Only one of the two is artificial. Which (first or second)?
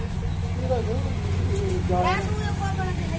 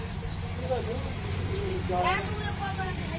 second